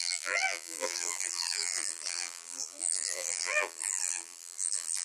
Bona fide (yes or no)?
no